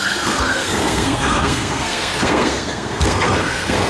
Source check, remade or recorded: remade